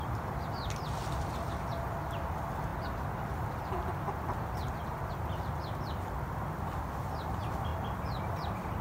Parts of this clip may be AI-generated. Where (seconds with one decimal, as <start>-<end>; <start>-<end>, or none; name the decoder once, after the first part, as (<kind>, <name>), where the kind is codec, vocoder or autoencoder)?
none